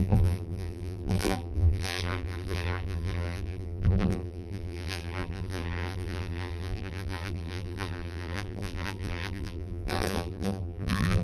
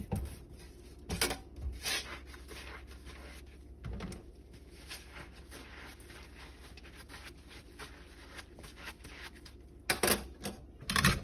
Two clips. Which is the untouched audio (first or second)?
second